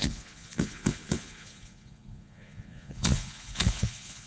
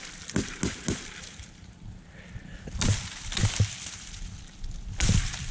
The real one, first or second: second